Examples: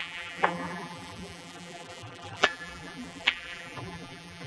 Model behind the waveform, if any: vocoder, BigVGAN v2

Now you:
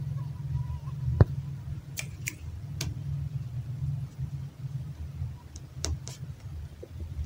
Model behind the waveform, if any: none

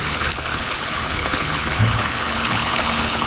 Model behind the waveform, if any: codec, HILCodec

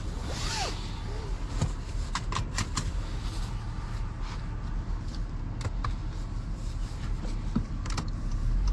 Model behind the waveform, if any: none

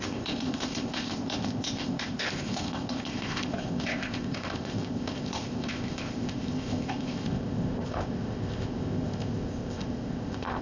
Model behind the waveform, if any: codec, ZipCodec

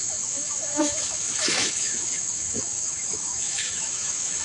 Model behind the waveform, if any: autoencoder, DAC-VAE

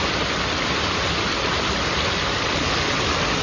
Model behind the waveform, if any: none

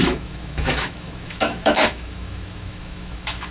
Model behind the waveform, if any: autoencoder, DAC-VAE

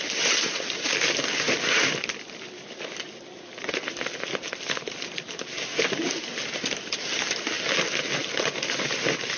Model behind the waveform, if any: none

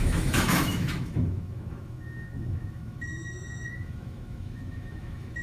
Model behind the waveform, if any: autoencoder, DAC-VAE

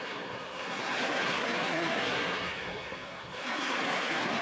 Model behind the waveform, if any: codec, SNAC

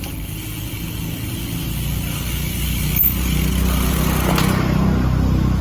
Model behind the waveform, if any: none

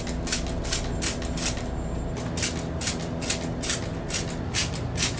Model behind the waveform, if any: none